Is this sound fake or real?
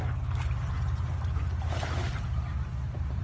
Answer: real